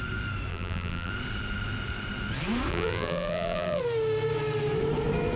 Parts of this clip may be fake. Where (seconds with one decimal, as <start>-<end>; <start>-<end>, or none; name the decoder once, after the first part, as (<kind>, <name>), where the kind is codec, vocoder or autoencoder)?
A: 0.5-1.1 (vocoder, BigVGAN v2); 2.7-3.8